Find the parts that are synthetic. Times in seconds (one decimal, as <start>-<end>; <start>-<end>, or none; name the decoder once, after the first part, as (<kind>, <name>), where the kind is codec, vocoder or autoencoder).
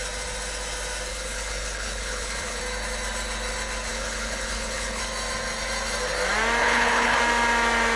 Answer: 1.1-2.6 (codec, HILCodec); 3.9-5.0; 6.6-7.2